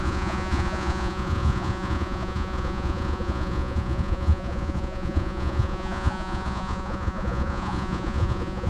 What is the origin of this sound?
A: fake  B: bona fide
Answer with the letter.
A